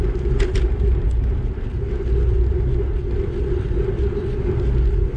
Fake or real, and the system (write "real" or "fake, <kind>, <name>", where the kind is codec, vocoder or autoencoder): real